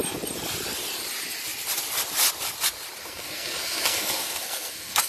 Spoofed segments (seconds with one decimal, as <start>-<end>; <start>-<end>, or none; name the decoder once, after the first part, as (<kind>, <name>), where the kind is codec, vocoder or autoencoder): 3.0-5.1 (codec, SNAC)